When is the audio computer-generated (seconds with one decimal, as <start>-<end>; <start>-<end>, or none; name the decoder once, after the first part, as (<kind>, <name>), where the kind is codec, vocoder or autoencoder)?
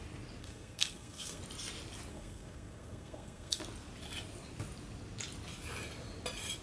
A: 0.4-1.4 (codec, SNAC); 2.1-3.6